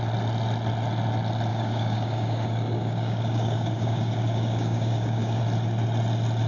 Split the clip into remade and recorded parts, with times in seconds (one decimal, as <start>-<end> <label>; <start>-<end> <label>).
0.0-1.5 recorded; 1.5-5.4 remade; 5.4-6.5 recorded